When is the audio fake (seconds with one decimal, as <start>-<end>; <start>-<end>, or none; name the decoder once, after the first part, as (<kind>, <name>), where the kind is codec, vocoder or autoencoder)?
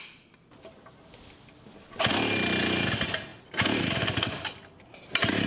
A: none